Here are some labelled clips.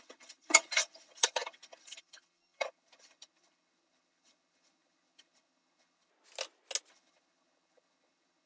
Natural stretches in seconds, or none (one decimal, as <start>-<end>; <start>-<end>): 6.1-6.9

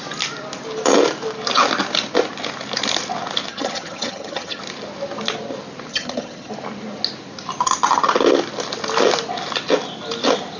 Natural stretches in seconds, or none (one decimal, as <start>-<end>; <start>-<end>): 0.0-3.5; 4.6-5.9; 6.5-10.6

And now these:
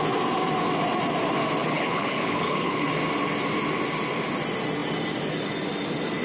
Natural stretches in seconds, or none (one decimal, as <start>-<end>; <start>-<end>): 0.0-1.6; 2.9-6.2